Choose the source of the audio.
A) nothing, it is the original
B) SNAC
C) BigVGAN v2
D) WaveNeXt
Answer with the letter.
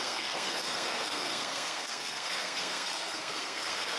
B